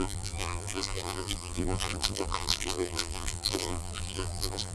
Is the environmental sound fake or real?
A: fake